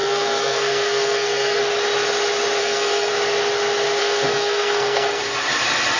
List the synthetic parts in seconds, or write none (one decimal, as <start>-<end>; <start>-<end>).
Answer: 0.0-1.6; 2.6-3.1; 4.0-5.2